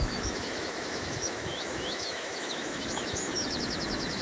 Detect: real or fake fake